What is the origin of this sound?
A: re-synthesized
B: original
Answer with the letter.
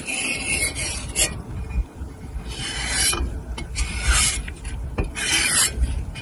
B